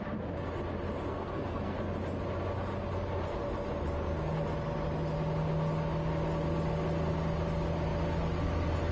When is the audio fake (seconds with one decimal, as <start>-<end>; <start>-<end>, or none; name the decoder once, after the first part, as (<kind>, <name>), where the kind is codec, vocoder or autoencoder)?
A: 1.1-1.8 (codec, SNAC)